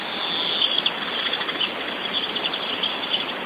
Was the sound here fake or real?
real